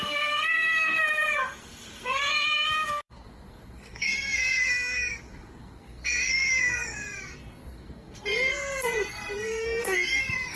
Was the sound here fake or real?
fake